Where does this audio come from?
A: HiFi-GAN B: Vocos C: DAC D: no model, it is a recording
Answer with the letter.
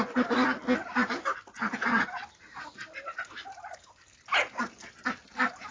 D